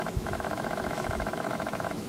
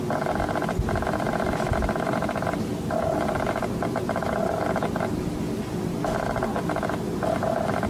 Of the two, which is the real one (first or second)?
second